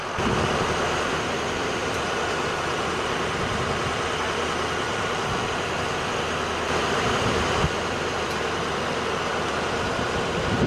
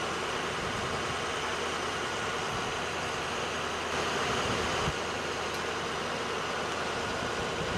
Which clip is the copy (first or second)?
first